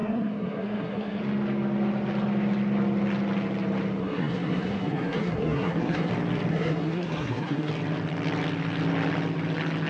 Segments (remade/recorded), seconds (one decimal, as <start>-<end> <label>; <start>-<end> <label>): 0.0-1.2 remade; 1.2-4.0 recorded; 4.0-6.1 remade; 6.1-6.5 recorded; 6.5-7.7 remade; 7.7-9.9 recorded